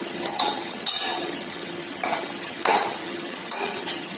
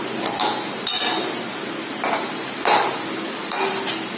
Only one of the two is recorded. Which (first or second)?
second